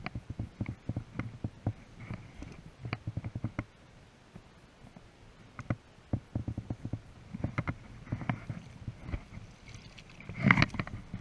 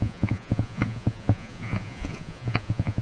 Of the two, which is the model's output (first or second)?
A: second